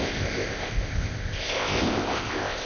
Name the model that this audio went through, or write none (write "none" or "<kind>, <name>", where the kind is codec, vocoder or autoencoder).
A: codec, ZipCodec